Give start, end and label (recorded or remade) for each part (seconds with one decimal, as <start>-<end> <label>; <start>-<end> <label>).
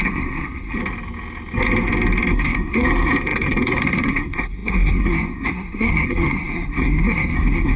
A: 0.0-0.8 remade; 0.8-2.3 recorded; 2.3-7.8 remade